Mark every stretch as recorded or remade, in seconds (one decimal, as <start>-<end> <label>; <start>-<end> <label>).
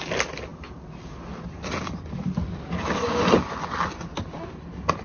0.0-5.0 recorded